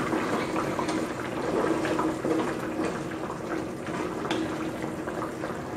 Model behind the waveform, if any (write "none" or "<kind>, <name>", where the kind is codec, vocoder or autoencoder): none